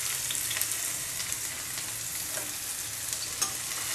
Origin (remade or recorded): recorded